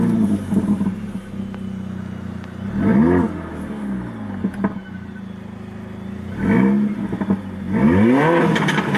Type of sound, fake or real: real